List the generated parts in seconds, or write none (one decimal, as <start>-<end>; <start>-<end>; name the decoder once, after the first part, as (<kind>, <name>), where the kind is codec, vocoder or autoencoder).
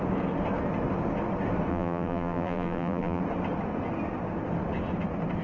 1.7-3.2 (vocoder, BigVGAN v2)